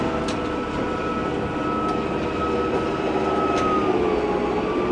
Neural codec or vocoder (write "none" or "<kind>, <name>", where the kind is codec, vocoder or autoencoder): none